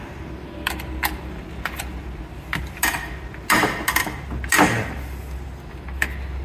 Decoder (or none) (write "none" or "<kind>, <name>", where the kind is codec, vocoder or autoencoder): none